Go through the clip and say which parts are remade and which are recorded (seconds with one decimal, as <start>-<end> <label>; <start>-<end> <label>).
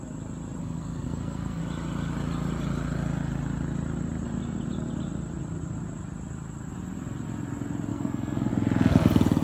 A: 0.0-0.6 recorded; 0.6-1.6 remade; 1.6-7.9 recorded; 7.9-8.5 remade; 8.5-9.4 recorded